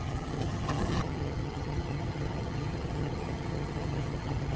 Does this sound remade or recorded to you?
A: remade